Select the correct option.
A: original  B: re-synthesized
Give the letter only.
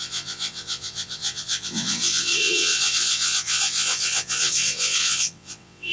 B